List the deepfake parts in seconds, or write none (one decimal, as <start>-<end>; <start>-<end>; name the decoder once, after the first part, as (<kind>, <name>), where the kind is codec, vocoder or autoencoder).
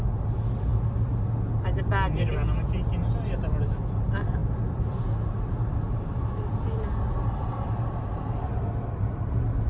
none